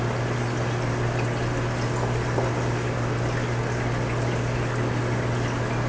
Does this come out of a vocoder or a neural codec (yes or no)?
no